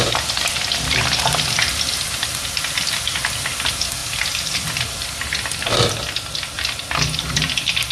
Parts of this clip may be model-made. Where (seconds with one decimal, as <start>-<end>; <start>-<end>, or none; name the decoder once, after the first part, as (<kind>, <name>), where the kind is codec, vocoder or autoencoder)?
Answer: none